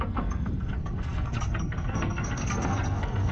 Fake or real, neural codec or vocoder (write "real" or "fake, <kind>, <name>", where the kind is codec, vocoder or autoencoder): fake, codec, SNAC